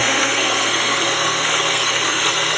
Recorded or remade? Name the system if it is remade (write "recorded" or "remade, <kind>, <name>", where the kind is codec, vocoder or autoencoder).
remade, codec, SNAC